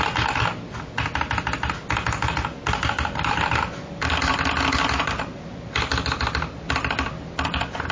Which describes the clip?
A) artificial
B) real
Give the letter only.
B